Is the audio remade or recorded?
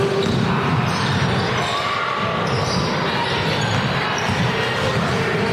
recorded